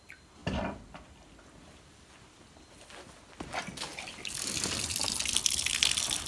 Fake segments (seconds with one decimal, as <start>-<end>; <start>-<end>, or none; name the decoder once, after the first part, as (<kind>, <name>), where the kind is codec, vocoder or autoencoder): 0.4-2.1 (vocoder, BigVGAN v2); 3.9-5.2

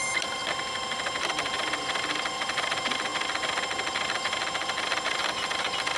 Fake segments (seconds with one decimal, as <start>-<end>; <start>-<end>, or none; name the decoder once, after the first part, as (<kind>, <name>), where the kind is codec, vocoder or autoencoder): 0.0-0.4 (vocoder, BigVGAN v2); 1.2-3.1; 4.6-6.0

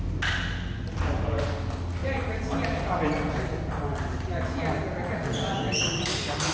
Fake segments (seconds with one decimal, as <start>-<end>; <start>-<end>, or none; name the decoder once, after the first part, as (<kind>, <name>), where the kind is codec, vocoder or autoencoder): none

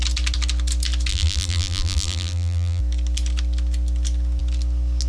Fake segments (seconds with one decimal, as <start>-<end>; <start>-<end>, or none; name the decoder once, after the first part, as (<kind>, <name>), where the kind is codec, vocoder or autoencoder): 1.1-2.8 (vocoder, BigVGAN v2)

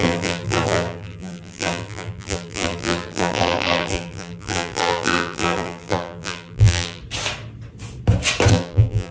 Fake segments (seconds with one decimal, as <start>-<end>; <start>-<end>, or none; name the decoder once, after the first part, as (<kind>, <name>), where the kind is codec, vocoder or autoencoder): 0.0-7.0 (vocoder, BigVGAN v2); 8.5-9.1